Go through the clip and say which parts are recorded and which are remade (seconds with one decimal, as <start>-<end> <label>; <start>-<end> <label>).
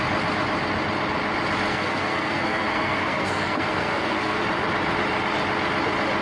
0.0-1.7 recorded; 1.7-4.4 remade; 4.4-6.2 recorded